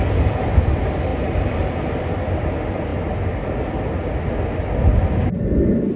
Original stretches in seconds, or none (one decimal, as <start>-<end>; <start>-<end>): 0.0-6.0